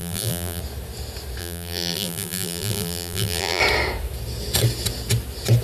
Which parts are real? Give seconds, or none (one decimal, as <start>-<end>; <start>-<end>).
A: 0.6-1.4; 3.6-5.6